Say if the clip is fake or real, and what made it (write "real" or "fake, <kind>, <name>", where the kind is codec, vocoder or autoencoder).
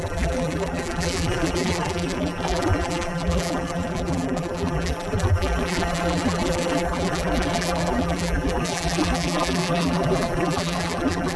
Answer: fake, vocoder, BigVGAN v2